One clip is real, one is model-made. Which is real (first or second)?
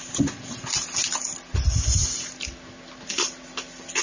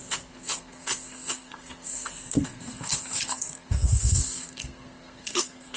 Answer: first